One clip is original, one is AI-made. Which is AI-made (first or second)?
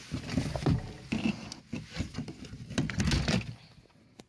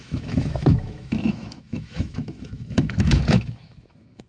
second